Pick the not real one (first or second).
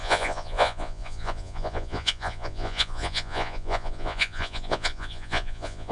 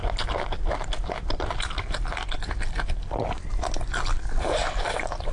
first